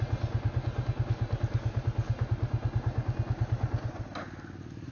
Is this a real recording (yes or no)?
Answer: yes